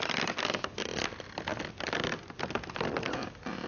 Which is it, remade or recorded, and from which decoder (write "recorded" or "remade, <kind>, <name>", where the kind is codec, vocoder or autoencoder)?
recorded